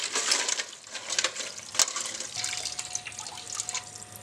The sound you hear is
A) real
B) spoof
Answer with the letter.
A